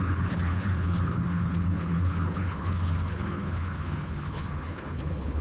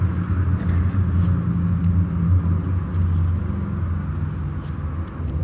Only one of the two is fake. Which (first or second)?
first